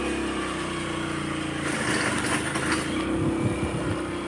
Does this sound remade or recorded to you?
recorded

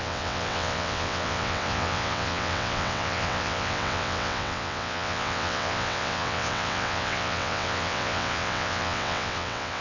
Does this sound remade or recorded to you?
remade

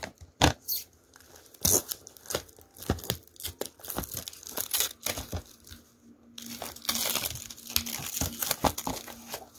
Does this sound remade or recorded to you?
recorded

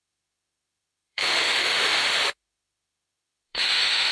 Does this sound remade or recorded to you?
remade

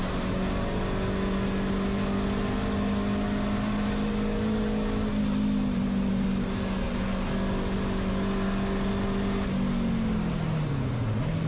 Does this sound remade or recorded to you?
recorded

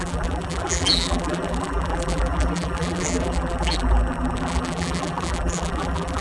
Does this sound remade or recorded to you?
remade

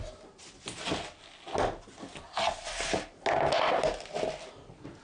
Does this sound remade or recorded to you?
recorded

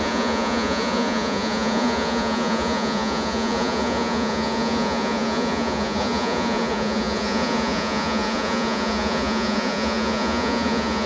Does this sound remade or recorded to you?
remade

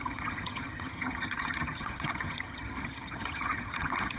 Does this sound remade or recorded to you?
remade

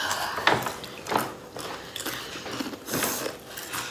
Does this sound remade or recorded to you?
recorded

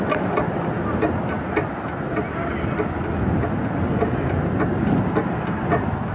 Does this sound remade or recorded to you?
recorded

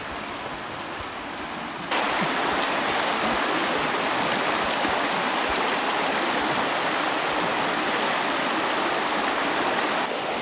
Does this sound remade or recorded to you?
recorded